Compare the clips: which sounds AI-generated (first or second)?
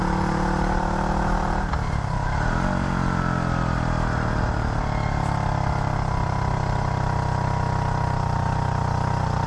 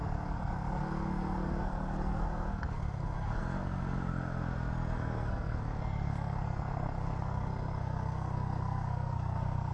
second